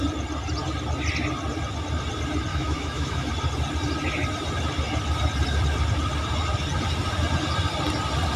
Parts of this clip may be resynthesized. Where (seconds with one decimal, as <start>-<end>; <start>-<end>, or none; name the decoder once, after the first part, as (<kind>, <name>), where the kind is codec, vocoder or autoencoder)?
2.5-3.3 (autoencoder, DAC-VAE)